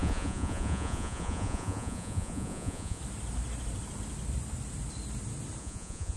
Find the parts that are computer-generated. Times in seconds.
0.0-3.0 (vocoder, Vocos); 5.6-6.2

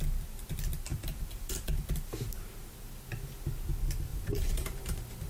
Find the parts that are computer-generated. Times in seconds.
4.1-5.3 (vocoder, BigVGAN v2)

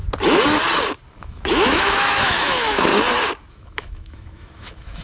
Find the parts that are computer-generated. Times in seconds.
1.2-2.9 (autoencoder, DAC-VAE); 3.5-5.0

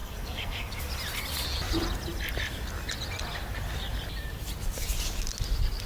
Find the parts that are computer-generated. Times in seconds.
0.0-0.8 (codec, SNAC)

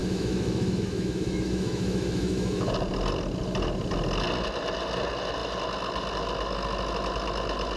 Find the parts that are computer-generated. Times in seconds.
0.0-2.7 (autoencoder, DAC-VAE)